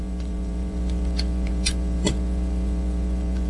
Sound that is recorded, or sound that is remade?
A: remade